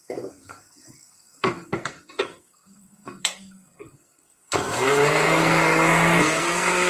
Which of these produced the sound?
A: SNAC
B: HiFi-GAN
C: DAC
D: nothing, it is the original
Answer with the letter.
A